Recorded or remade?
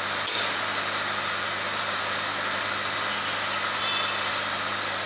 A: recorded